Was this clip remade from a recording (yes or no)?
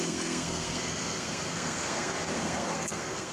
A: yes